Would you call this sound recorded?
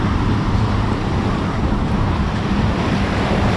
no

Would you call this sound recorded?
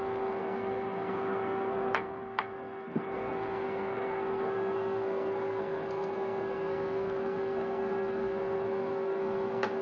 no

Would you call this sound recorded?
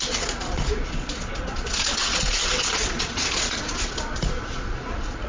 no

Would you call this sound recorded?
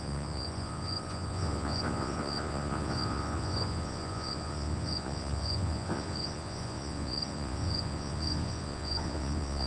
no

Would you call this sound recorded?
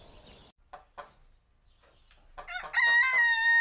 yes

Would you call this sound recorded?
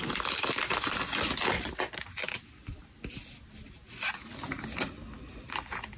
yes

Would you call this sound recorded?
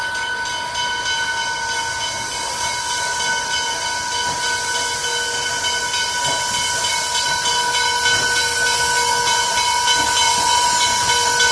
yes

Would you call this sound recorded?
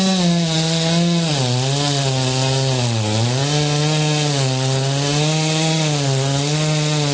yes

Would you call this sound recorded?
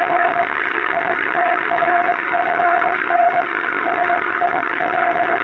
no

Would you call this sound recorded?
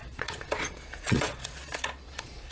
no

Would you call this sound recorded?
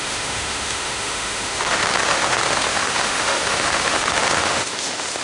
no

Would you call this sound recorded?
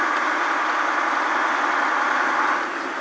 yes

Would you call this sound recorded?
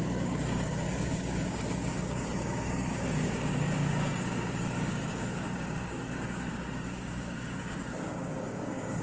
no